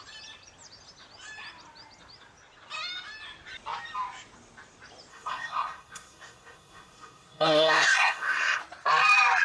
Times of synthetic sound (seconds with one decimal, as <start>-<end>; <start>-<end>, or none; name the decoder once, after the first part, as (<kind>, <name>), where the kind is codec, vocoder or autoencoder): 5.1-8.6 (codec, SNAC)